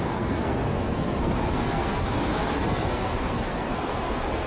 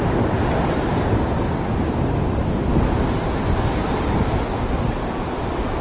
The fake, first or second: first